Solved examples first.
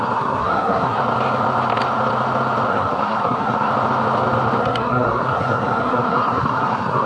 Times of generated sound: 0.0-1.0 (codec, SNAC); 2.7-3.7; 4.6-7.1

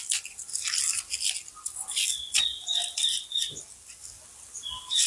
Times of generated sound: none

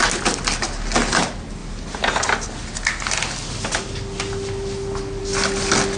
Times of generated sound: none